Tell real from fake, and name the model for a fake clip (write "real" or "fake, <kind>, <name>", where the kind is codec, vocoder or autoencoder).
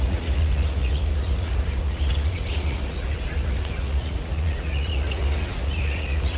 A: fake, vocoder, Vocos